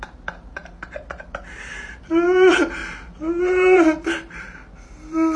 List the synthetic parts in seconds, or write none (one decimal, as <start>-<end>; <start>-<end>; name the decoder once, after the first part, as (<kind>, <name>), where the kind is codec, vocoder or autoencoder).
0.0-2.8 (vocoder, BigVGAN v2); 3.4-5.4